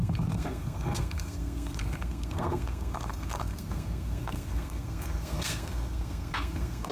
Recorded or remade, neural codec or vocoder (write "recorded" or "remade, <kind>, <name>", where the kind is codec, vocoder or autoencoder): remade, codec, SNAC